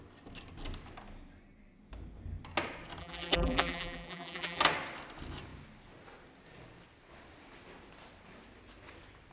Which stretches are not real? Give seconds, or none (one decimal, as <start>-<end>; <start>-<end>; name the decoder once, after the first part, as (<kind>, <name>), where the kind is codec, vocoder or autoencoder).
3.0-4.6 (vocoder, BigVGAN v2)